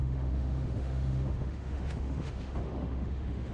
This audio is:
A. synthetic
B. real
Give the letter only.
A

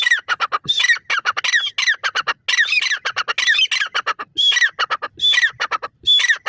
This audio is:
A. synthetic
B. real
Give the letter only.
B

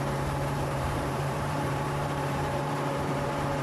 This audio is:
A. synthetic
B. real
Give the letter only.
A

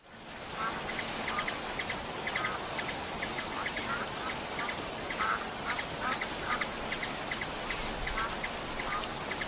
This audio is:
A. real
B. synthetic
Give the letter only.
A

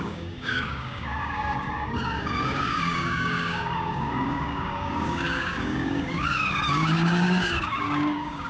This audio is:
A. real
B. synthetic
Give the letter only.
B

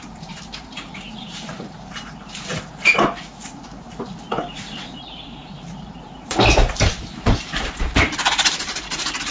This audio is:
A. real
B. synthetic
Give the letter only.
B